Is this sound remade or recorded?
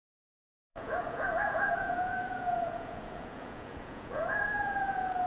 remade